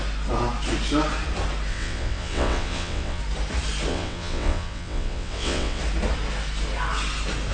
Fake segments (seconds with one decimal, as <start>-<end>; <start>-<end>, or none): 1.7-3.2; 3.9-5.8